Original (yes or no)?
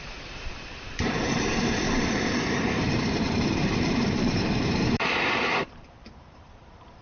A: no